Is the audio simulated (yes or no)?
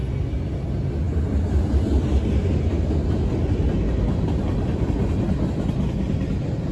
no